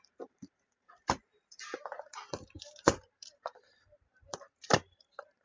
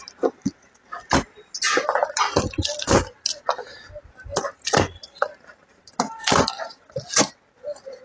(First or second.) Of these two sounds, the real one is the second